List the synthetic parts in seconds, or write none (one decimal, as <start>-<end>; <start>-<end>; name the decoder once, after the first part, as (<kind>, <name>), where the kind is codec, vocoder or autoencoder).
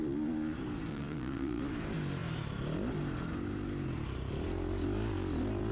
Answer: 0.9-1.6 (vocoder, Vocos)